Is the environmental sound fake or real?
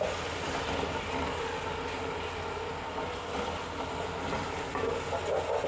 real